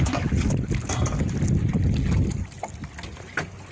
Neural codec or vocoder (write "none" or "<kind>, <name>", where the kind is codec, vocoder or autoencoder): none